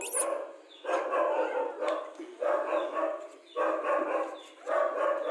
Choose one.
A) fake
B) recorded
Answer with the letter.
B